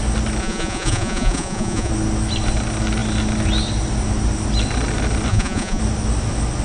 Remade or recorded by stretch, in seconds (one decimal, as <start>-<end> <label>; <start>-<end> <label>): 0.0-0.4 recorded; 0.4-1.9 remade; 1.9-5.3 recorded; 5.3-5.8 remade; 5.8-6.6 recorded